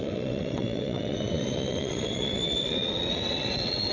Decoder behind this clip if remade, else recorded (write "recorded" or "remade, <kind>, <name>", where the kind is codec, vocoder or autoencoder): remade, vocoder, WaveNeXt